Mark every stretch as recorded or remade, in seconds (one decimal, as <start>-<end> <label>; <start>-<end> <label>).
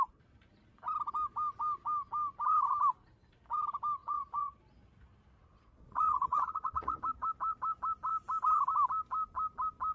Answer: 0.0-4.0 recorded; 4.0-4.6 remade; 4.6-5.4 recorded; 5.4-7.0 remade; 7.0-9.9 recorded